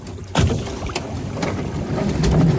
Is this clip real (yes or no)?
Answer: yes